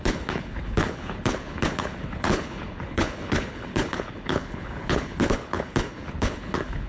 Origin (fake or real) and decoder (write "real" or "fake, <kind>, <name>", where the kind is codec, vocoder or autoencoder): fake, codec, HILCodec